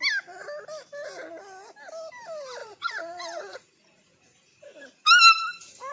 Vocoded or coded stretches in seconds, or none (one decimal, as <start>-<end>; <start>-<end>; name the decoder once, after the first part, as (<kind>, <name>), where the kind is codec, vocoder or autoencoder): 2.6-4.6 (vocoder, Vocos)